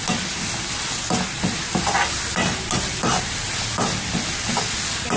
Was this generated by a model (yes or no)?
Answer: no